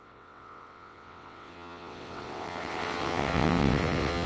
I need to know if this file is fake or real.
fake